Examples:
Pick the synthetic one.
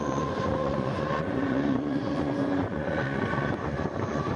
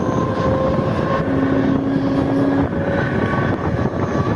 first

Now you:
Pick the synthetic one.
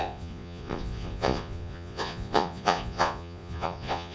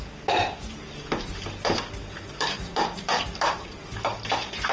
first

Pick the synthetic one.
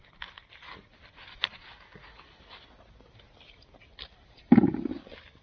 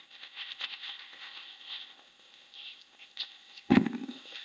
second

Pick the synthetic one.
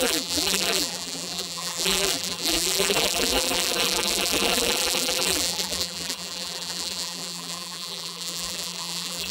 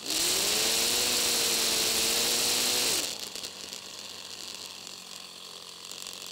first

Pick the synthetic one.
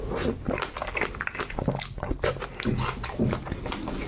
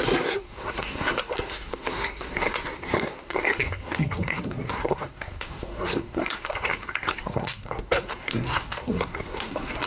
second